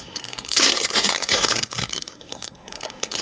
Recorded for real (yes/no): no